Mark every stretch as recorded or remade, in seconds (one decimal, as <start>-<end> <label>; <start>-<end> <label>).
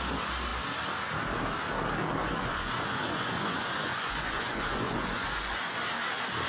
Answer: 0.0-2.2 recorded; 2.2-5.8 remade; 5.8-6.5 recorded